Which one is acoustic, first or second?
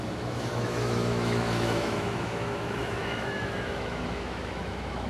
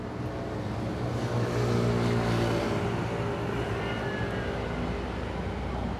second